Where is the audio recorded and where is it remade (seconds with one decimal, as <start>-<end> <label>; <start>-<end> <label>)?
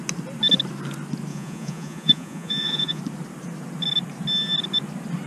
0.0-1.3 recorded; 1.3-3.0 remade; 3.0-5.3 recorded